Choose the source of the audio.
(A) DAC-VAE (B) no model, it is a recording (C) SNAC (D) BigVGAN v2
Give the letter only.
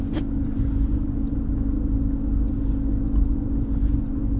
B